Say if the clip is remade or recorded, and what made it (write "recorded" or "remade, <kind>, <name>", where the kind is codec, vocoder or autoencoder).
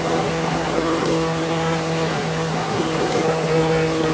remade, codec, SNAC